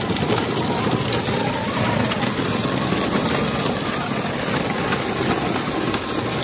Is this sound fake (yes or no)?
no